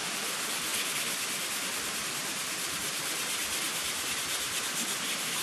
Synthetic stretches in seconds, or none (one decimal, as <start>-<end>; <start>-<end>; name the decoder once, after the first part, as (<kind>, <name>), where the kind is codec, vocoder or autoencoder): none